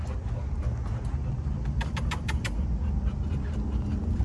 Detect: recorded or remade recorded